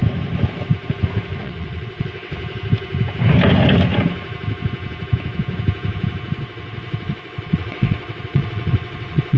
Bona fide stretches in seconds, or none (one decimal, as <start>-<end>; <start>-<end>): 0.0-1.4; 2.3-6.4